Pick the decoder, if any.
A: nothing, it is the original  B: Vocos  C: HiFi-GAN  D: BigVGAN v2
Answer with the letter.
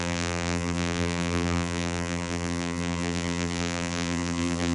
D